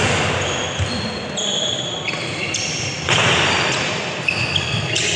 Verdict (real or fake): fake